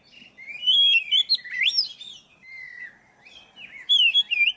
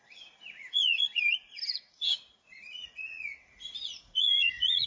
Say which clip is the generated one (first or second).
second